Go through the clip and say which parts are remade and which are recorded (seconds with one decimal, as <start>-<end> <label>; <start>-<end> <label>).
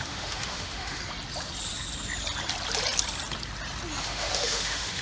0.0-1.0 remade; 1.0-4.0 recorded; 4.0-5.0 remade